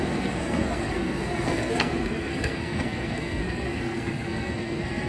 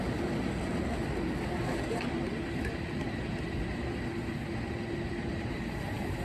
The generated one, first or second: first